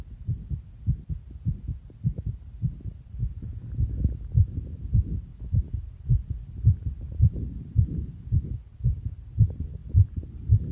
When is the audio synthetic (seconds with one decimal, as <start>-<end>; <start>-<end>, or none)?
5.3-8.5; 9.8-10.7